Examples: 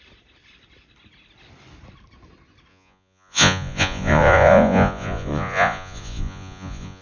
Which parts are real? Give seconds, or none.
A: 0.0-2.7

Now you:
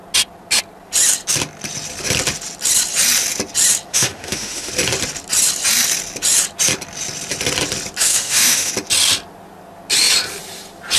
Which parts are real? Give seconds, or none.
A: 0.0-3.9; 4.7-8.0; 8.7-11.0

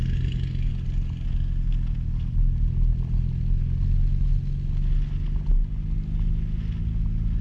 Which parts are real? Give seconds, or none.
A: 0.0-7.4